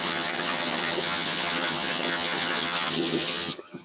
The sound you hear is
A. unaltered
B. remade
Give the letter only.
B